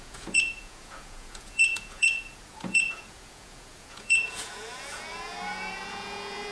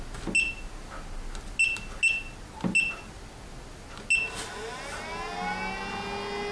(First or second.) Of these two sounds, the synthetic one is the first